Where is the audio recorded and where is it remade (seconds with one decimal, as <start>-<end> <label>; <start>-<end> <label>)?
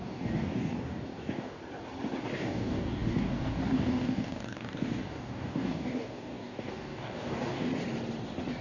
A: 0.0-1.6 remade; 1.6-2.2 recorded; 2.2-7.7 remade; 7.7-8.6 recorded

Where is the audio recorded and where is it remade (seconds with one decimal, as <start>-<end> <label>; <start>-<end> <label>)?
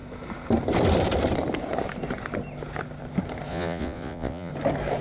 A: 0.0-3.5 recorded; 3.5-4.5 remade; 4.5-5.0 recorded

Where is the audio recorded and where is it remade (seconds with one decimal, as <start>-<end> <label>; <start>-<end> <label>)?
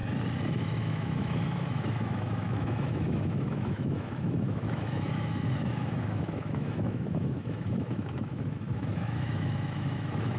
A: 0.0-0.6 recorded; 0.6-10.4 remade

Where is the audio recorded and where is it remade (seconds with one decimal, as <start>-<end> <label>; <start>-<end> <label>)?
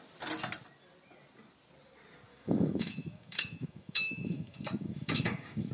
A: 0.0-2.3 recorded; 2.3-5.7 remade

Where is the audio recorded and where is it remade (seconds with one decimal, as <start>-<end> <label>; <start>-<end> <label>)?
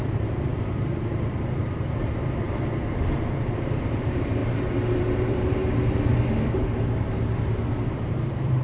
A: 0.0-5.6 remade; 5.6-7.7 recorded; 7.7-8.6 remade